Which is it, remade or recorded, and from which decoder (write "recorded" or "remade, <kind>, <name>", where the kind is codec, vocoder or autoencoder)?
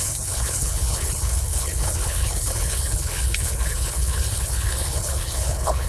remade, codec, HILCodec